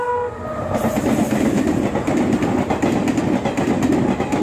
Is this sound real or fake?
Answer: real